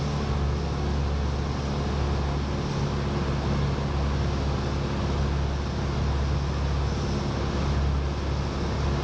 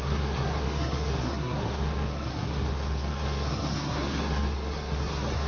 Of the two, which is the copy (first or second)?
second